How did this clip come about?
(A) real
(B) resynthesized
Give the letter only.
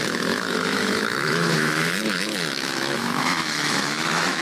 B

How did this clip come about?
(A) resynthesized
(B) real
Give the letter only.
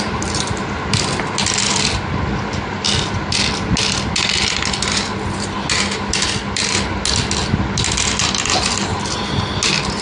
B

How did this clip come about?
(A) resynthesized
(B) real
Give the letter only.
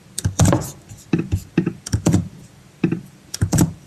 A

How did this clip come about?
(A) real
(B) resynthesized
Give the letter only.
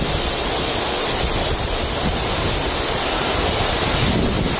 A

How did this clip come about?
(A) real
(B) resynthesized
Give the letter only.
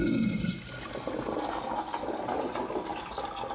A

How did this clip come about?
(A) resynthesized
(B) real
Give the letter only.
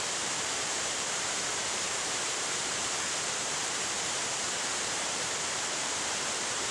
A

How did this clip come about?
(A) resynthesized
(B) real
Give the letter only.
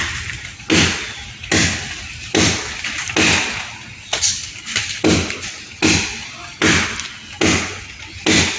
B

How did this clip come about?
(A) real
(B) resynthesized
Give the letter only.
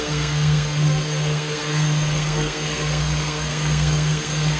B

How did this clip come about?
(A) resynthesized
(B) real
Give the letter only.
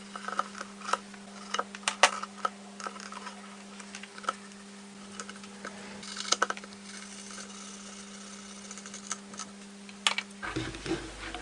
B